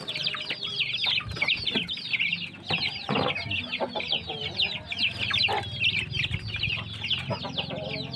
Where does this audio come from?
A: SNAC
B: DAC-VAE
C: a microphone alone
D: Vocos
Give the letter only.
C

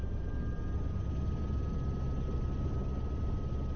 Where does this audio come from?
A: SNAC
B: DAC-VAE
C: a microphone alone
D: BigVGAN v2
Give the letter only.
C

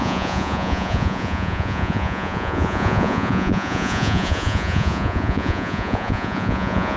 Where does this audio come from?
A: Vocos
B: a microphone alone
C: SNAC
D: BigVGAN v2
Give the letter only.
A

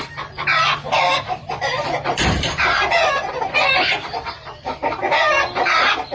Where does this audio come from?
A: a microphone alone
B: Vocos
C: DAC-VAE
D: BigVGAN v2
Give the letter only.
D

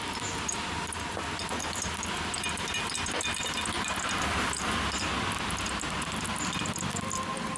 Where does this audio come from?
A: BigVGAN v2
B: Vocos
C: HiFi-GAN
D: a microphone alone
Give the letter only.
A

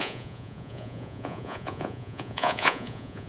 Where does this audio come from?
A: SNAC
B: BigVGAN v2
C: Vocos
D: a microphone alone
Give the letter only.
C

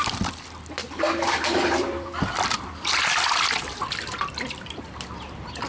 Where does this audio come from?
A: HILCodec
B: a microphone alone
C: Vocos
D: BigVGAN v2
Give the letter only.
D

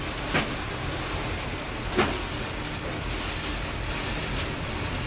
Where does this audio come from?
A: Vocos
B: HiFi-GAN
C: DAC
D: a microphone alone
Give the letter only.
D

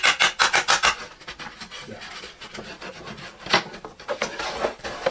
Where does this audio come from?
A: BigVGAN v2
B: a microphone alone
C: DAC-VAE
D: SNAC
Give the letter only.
B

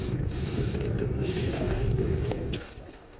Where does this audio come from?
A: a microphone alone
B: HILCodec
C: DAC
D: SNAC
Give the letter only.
C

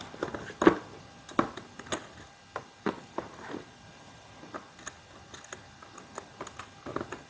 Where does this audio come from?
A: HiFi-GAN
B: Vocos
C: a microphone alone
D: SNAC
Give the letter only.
C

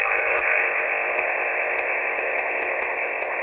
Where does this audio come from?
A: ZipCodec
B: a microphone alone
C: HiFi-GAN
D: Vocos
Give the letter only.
A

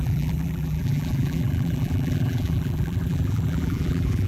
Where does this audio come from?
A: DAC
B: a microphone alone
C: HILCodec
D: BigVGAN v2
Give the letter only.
D